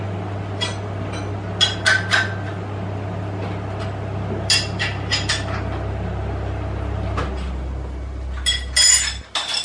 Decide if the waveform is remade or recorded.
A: recorded